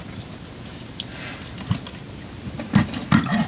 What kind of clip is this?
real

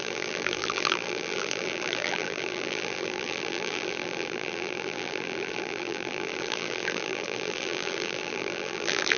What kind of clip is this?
fake